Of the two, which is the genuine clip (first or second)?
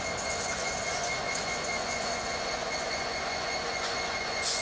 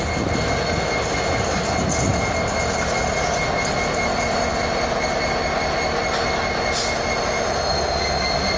second